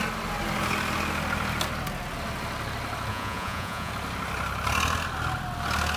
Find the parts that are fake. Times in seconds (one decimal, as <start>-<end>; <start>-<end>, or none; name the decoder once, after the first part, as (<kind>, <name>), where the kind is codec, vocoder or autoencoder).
3.1-3.9 (vocoder, Vocos)